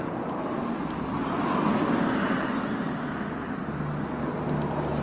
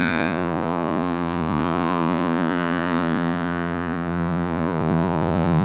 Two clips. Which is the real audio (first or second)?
first